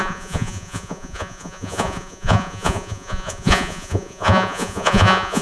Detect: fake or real fake